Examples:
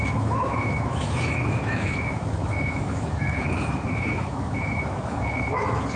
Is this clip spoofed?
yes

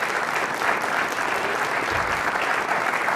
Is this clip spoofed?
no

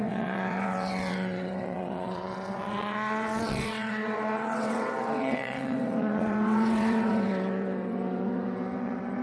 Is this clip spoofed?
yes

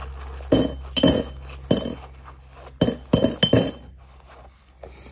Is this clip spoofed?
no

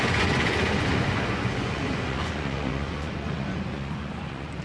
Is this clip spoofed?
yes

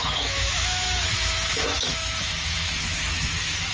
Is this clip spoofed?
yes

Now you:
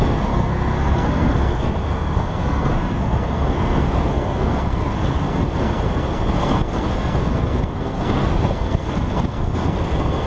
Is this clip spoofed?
yes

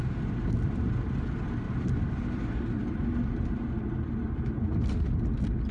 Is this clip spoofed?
no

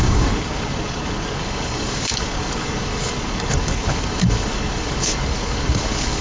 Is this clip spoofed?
yes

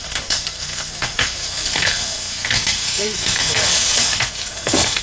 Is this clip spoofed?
yes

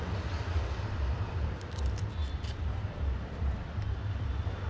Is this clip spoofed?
yes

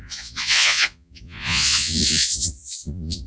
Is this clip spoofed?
yes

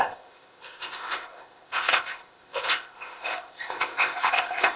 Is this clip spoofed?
yes